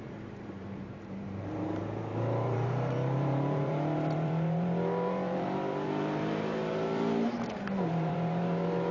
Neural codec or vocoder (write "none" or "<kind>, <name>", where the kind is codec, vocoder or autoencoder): vocoder, BigVGAN v2